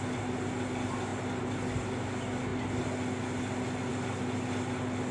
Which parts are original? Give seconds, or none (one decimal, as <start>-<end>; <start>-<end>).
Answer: 0.0-5.1